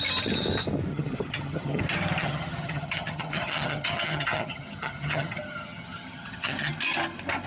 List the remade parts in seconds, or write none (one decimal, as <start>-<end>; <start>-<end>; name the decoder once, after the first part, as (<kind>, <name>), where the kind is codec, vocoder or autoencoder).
0.9-1.8 (vocoder, HiFi-GAN); 2.2-6.7